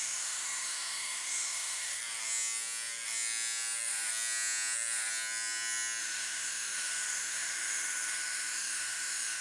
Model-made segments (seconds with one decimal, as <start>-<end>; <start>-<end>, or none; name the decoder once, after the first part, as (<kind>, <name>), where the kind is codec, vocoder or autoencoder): 0.0-2.0 (autoencoder, DAC-VAE); 6.0-9.4